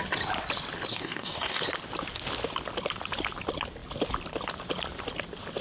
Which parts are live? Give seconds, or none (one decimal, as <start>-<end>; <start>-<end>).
0.0-0.9; 1.6-5.6